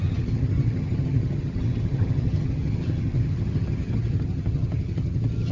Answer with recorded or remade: remade